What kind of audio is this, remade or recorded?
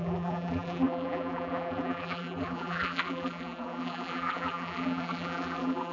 remade